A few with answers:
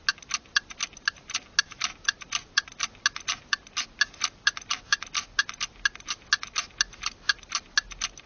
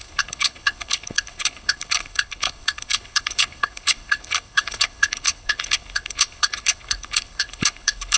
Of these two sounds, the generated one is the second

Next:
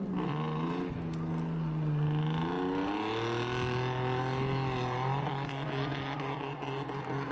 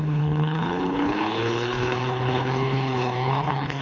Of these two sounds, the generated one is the second